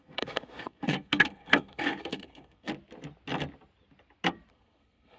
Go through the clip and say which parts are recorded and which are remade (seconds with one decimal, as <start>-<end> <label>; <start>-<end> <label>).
0.0-2.7 remade; 2.7-4.5 recorded; 4.5-5.2 remade